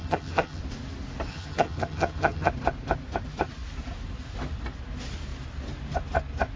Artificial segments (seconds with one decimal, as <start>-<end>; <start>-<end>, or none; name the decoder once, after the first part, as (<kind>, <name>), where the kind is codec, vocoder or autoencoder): 0.0-0.6 (vocoder, HiFi-GAN); 1.3-2.5